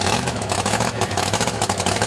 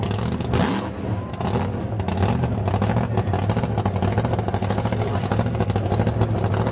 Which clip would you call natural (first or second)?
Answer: second